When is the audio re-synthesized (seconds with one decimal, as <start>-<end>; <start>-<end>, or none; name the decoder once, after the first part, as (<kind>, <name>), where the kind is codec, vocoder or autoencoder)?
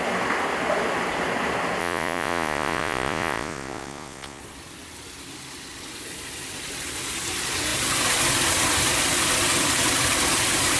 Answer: 1.8-4.4 (vocoder, Vocos)